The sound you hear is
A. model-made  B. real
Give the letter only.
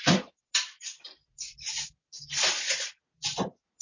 B